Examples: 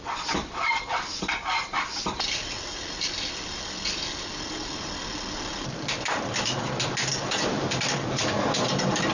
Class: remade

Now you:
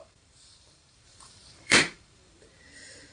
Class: remade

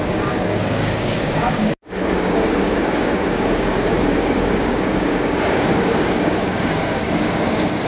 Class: remade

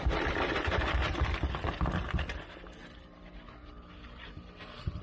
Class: recorded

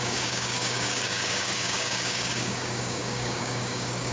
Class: remade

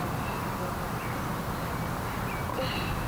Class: recorded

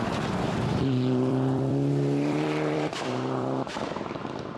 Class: remade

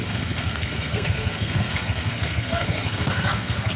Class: remade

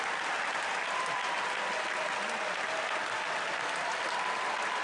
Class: recorded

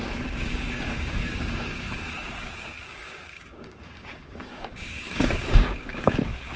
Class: remade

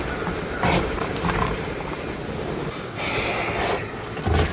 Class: recorded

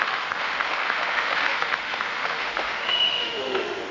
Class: remade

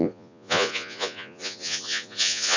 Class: remade